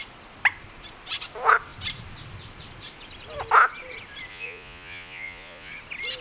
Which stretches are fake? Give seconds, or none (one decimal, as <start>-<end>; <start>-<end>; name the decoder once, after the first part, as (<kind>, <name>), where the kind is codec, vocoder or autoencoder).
4.3-5.7 (vocoder, Vocos)